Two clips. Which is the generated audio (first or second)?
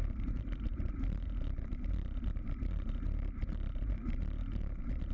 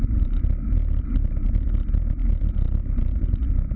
first